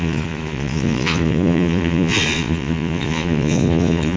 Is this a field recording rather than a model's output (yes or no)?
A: no